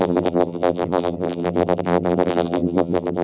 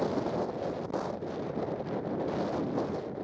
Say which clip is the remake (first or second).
first